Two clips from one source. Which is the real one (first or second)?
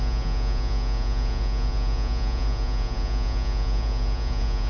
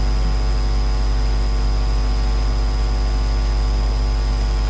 second